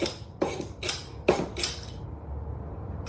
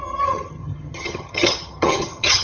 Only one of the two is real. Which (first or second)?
first